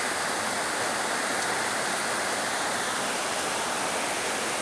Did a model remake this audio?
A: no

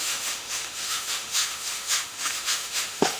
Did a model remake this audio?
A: yes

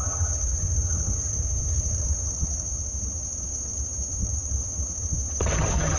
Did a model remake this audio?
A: yes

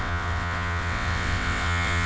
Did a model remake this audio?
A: yes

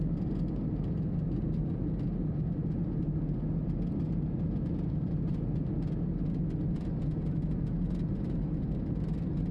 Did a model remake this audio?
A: no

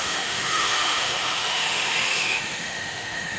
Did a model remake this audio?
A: yes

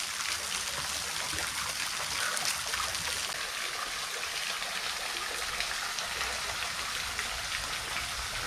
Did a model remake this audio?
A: no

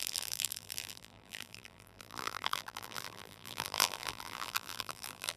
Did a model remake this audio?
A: yes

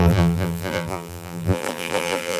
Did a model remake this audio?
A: yes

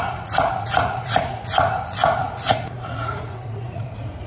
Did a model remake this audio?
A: yes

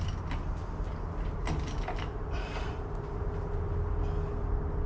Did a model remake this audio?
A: no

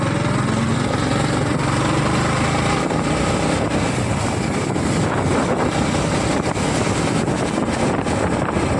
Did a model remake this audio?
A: no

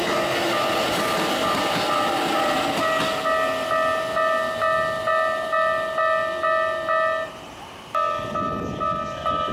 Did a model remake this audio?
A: no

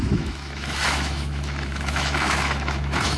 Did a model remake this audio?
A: yes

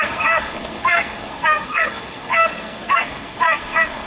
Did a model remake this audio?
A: yes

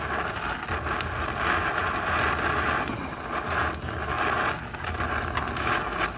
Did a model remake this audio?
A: no